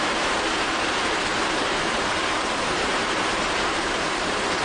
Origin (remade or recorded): remade